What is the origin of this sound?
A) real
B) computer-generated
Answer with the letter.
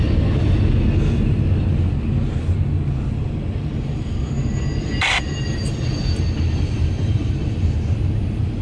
A